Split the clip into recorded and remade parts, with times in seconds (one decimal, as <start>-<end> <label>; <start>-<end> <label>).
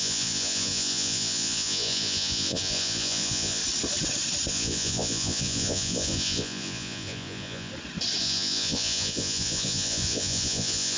0.0-3.6 remade; 3.6-4.5 recorded; 4.5-7.7 remade; 7.7-8.2 recorded; 8.2-11.0 remade